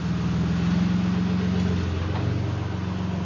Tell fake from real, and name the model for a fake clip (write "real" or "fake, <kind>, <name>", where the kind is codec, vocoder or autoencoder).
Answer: real